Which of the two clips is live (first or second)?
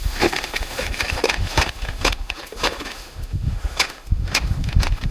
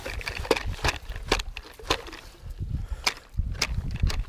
second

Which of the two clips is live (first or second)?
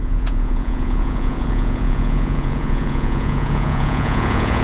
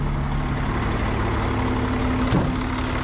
second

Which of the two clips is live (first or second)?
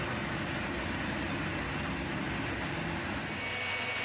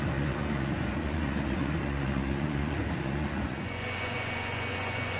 first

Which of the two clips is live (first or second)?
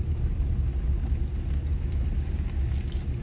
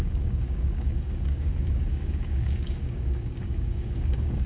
first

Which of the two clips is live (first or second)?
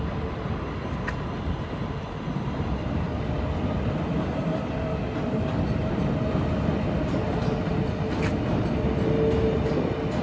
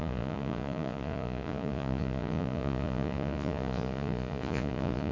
first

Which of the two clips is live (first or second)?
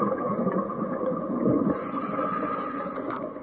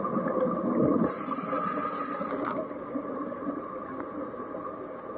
second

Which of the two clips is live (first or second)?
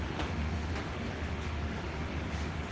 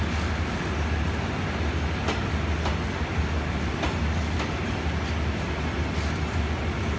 second